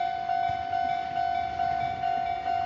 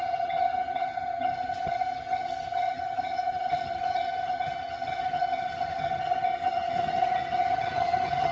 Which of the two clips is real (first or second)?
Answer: first